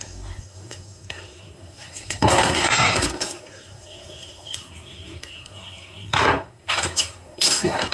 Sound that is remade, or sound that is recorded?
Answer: remade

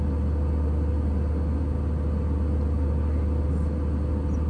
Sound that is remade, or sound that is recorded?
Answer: recorded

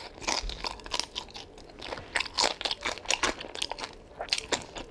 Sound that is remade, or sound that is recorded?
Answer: recorded